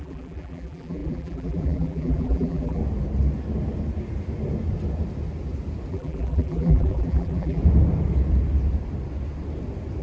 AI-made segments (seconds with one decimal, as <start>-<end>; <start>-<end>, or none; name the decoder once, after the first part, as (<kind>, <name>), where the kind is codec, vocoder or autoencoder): 0.0-2.8 (vocoder, BigVGAN v2); 5.9-7.6